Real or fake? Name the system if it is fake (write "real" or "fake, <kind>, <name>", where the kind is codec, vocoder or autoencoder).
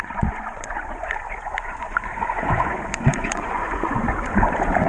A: fake, vocoder, Vocos